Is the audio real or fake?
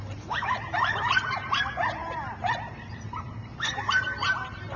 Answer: fake